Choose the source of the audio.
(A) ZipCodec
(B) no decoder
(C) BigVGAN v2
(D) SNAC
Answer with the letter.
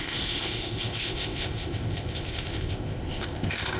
A